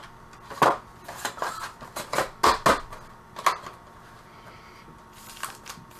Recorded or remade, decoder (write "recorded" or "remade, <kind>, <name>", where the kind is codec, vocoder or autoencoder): recorded